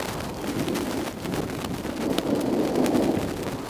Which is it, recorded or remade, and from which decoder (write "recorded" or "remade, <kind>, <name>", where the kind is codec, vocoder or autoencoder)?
recorded